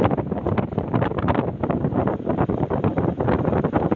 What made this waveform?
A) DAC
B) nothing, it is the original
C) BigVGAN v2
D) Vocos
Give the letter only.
B